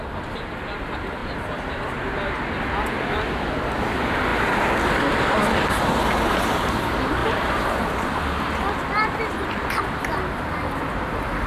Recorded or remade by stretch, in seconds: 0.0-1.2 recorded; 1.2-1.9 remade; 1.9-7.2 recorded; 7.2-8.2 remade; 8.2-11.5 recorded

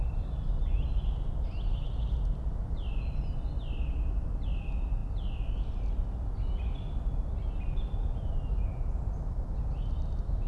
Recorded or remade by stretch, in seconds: 0.0-10.5 recorded